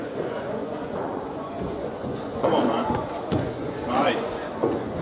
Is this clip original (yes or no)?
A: no